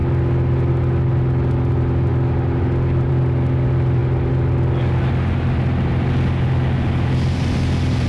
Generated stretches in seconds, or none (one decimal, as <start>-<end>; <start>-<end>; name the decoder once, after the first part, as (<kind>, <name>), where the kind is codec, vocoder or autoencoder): none